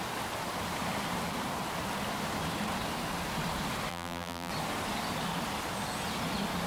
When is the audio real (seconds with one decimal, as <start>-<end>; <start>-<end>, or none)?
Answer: 0.0-3.9; 4.5-6.7